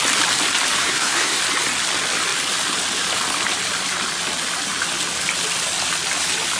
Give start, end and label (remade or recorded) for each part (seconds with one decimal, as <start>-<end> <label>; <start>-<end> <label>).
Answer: 0.0-0.8 recorded; 0.8-1.4 remade; 1.4-6.6 recorded

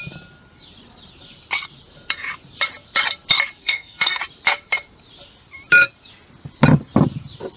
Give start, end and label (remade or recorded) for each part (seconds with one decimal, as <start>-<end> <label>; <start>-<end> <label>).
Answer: 0.0-3.6 recorded; 3.6-4.2 remade; 4.2-7.6 recorded

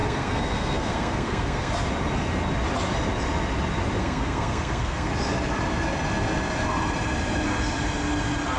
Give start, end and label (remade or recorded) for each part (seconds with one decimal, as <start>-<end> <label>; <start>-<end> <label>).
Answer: 0.0-1.7 remade; 1.7-4.0 recorded; 4.0-5.1 remade; 5.1-8.6 recorded

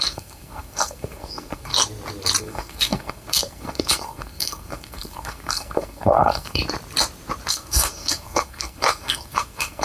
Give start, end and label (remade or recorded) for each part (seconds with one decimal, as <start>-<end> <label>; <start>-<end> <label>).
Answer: 0.0-1.7 remade; 1.7-2.4 recorded; 2.4-6.6 remade; 6.6-7.5 recorded; 7.5-9.8 remade